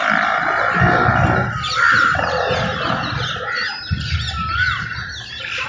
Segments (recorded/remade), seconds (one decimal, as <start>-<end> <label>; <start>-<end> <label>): 0.0-5.7 recorded